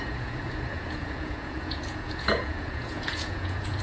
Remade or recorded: remade